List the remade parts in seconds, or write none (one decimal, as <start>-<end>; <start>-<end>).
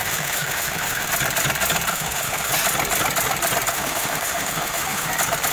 0.0-1.1; 1.9-2.5; 3.7-5.1